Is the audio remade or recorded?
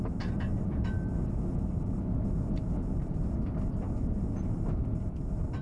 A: recorded